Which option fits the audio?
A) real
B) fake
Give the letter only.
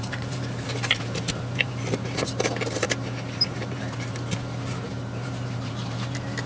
B